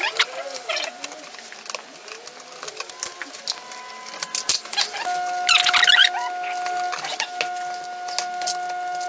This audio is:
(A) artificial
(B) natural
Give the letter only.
B